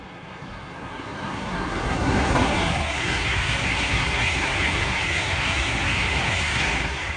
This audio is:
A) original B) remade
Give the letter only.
B